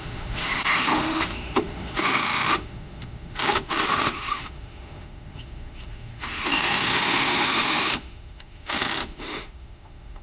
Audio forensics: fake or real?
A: fake